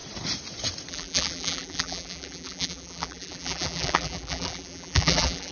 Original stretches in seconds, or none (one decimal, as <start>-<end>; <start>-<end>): 0.0-0.9